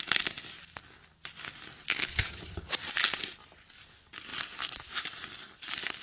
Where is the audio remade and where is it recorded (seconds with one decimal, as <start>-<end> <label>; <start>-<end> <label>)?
0.0-2.1 recorded; 2.1-2.7 remade; 2.7-6.0 recorded